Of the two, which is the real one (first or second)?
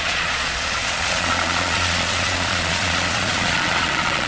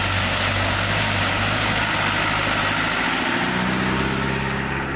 second